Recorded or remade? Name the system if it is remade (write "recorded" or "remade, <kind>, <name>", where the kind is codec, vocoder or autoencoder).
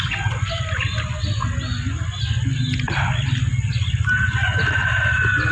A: recorded